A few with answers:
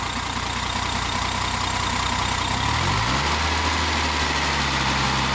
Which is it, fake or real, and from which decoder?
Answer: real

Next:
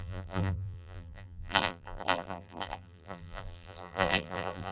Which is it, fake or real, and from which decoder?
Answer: fake, vocoder, BigVGAN v2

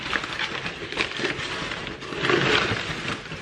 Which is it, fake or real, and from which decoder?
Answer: real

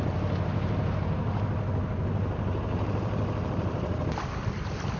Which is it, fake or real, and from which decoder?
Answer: real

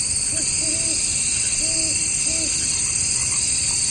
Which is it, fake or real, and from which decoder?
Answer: real